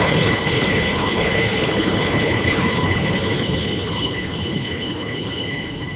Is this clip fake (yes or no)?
yes